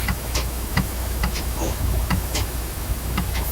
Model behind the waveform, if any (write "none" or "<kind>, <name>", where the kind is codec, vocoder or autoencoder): autoencoder, DAC-VAE